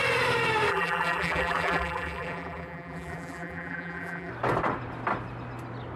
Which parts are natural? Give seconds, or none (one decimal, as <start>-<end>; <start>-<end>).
0.0-0.7; 4.3-6.0